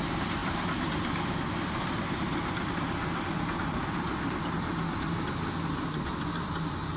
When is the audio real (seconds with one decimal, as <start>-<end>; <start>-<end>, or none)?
none